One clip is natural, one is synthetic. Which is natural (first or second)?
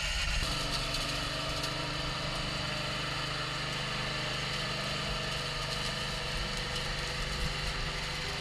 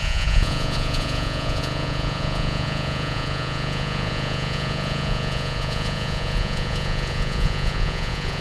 first